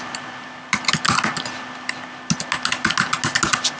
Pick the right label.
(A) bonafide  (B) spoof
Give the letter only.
A